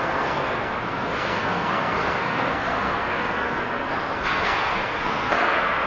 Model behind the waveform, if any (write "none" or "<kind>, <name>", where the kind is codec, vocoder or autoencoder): codec, SNAC